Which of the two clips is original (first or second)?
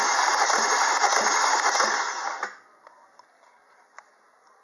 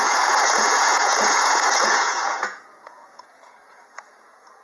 first